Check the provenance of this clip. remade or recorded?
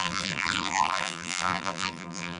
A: remade